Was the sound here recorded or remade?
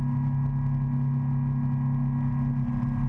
recorded